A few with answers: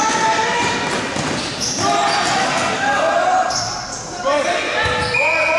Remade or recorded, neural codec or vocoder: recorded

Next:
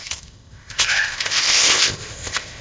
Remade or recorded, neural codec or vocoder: remade, codec, ZipCodec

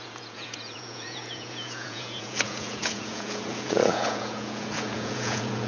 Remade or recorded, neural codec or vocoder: remade, vocoder, Vocos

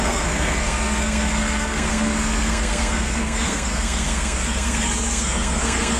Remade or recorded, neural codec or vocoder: remade, codec, SNAC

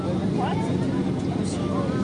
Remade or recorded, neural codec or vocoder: recorded